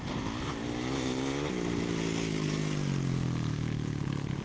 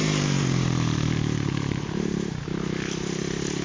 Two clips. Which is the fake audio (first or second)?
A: second